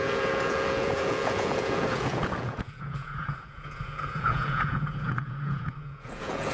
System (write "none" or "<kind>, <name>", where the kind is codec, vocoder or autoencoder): vocoder, Vocos